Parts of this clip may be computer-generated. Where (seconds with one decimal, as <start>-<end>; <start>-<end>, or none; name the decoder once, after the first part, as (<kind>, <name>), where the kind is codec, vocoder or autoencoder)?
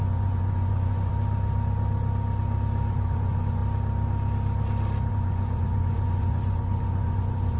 0.0-1.1 (vocoder, Vocos); 2.9-3.6; 5.1-7.6